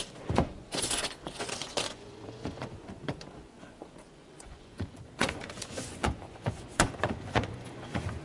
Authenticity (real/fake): fake